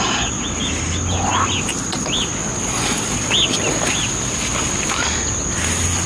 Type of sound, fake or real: real